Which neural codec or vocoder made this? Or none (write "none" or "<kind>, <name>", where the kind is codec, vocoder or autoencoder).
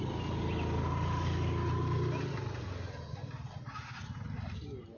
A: none